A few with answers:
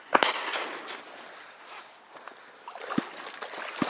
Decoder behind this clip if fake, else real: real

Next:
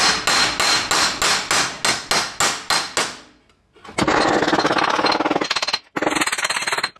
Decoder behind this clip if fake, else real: real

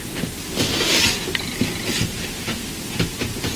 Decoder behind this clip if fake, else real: real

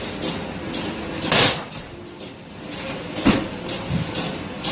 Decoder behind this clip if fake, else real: real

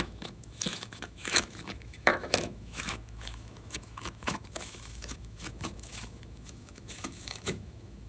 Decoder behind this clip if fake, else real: fake, autoencoder, DAC-VAE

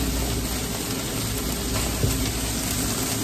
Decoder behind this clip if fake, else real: real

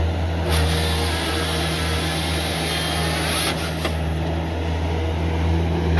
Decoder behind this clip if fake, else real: real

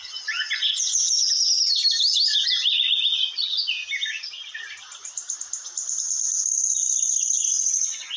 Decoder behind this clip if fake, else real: real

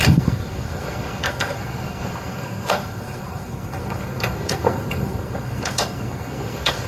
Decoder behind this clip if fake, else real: fake, codec, SNAC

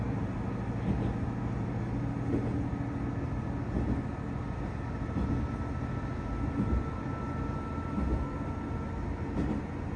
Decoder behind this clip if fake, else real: real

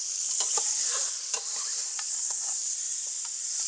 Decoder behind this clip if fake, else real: real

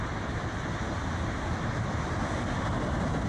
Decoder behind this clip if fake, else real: real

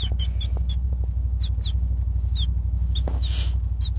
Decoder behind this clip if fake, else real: real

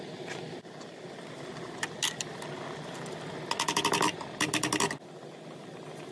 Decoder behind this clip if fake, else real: real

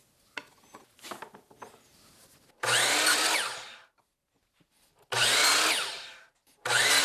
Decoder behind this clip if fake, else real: real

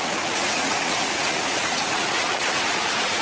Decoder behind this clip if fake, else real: fake, vocoder, Vocos